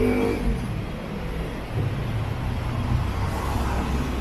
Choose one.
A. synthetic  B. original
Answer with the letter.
B